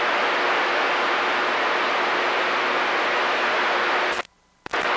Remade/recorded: recorded